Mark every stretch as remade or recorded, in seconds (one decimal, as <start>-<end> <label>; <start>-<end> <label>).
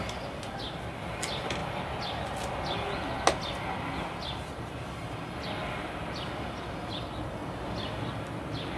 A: 0.0-8.8 recorded